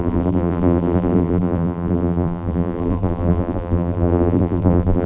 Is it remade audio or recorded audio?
remade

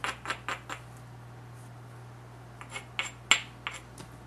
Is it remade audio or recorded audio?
recorded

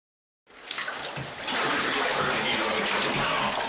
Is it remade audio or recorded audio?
recorded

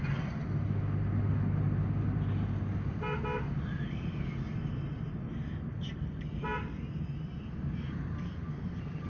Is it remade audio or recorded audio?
recorded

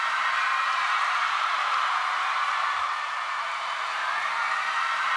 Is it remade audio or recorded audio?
remade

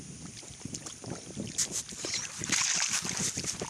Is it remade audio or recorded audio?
recorded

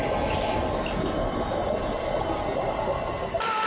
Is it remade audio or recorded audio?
recorded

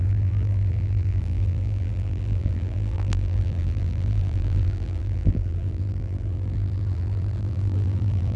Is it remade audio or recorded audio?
remade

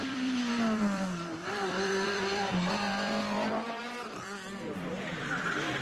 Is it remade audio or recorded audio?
remade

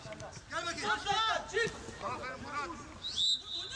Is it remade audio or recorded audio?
recorded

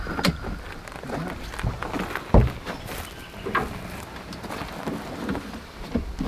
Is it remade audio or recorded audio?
recorded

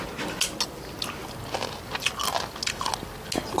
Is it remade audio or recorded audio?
recorded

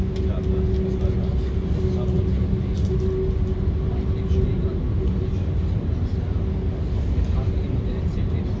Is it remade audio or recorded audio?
recorded